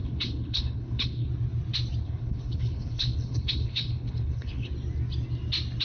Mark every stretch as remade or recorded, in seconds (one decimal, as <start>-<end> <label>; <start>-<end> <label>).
0.0-1.3 remade; 1.3-2.0 recorded; 2.0-4.7 remade; 4.7-5.8 recorded